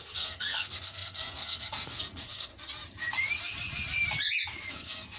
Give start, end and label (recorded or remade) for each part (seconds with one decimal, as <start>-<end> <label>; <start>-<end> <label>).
0.0-2.5 remade; 2.5-4.7 recorded; 4.7-5.2 remade